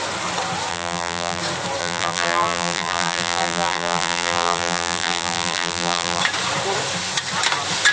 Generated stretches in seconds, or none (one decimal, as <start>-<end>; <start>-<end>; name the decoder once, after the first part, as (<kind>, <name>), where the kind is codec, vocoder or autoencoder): 0.7-1.4 (vocoder, BigVGAN v2); 1.8-6.2